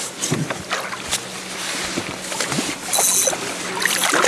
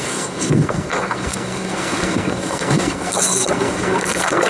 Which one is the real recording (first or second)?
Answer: first